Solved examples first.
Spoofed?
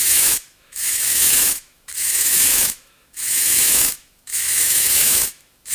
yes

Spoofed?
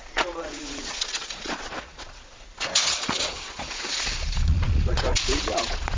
yes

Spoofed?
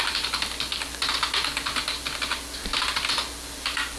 no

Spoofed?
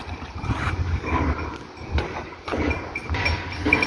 no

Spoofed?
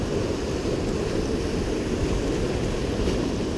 no